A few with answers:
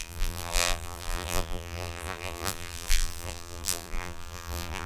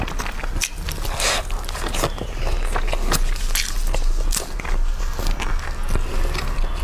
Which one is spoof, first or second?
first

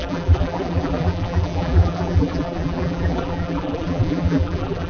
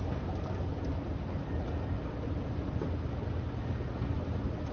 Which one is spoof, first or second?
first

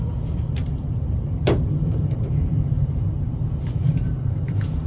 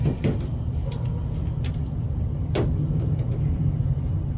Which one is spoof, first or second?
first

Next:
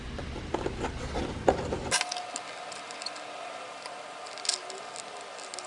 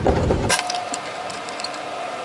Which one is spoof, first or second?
second